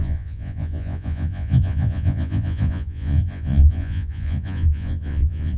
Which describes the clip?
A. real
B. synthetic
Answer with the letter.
B